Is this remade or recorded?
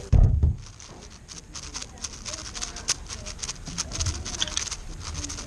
recorded